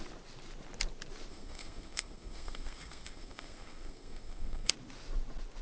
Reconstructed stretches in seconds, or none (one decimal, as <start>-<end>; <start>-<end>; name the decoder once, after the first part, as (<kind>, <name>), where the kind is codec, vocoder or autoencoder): 1.3-4.7 (codec, SNAC)